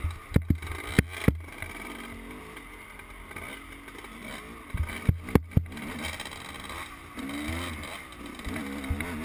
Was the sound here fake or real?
real